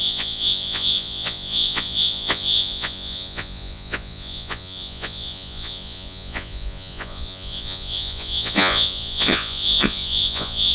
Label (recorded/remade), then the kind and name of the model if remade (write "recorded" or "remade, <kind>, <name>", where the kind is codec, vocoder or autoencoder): remade, vocoder, Vocos